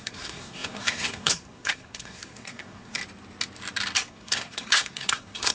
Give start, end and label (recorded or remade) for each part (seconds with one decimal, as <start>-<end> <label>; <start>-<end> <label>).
0.0-3.0 remade; 3.0-4.1 recorded; 4.1-5.5 remade